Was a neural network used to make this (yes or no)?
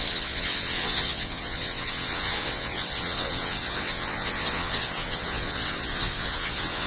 yes